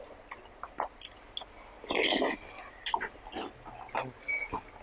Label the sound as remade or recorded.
recorded